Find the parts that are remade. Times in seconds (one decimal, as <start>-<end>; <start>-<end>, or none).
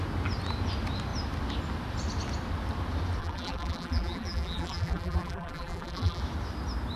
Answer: 3.2-6.2